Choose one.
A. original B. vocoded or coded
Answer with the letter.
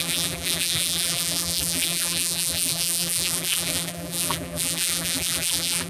B